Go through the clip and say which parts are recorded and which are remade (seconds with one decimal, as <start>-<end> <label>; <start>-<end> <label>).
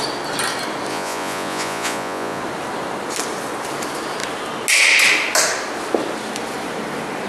0.0-0.9 recorded; 0.9-2.4 remade; 2.4-7.3 recorded